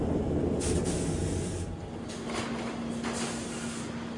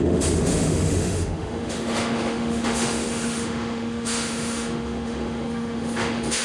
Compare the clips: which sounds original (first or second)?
first